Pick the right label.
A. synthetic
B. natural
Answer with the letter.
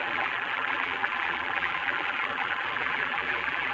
A